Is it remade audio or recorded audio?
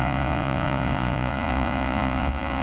remade